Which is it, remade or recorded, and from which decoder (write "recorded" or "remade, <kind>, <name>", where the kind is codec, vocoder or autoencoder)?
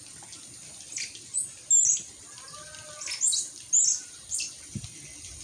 recorded